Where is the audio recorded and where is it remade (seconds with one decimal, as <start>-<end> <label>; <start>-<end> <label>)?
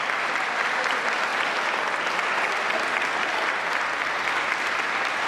0.0-5.3 recorded